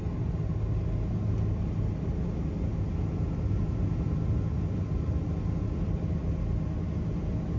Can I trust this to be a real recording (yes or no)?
yes